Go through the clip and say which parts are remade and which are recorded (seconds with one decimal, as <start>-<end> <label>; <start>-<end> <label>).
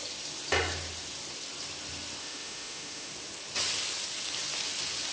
0.0-2.2 recorded; 2.2-3.1 remade; 3.1-5.1 recorded